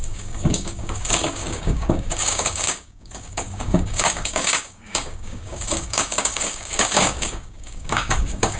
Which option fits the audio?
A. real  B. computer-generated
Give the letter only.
B